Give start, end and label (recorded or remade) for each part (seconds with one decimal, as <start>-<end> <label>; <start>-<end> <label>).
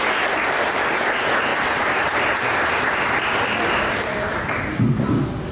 0.0-1.5 recorded; 1.5-4.8 remade; 4.8-5.5 recorded